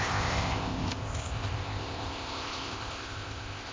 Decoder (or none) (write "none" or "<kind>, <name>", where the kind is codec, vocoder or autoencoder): codec, ZipCodec